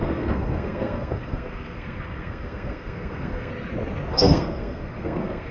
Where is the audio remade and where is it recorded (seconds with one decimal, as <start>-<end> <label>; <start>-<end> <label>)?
0.0-3.5 remade; 3.5-4.1 recorded; 4.1-5.5 remade